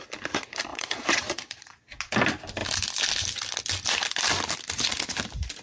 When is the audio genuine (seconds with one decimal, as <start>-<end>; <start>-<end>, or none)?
0.0-0.7; 2.0-5.6